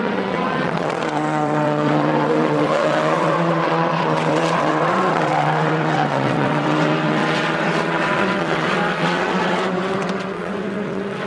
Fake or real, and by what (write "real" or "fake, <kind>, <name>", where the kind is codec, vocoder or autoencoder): fake, vocoder, WaveNeXt